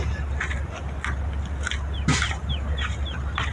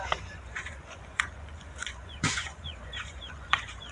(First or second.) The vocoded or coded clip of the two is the second